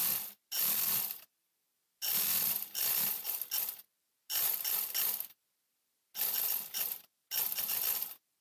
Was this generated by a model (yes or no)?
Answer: no